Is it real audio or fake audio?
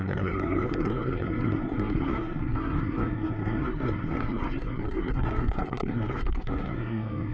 fake